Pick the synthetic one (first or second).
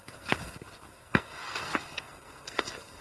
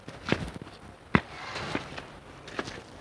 first